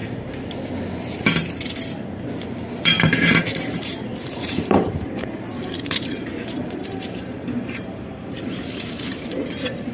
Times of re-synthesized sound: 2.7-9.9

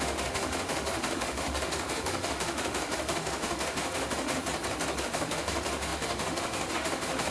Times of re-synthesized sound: 0.0-4.4; 5.0-7.3

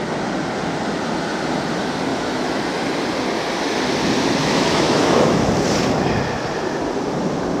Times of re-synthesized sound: 2.1-2.6; 4.4-5.5

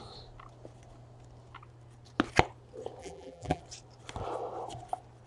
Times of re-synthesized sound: 3.0-3.6

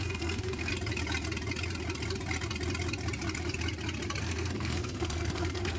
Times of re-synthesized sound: 0.0-0.7; 4.2-5.8

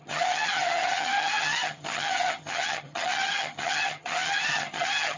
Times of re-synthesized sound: 0.0-5.2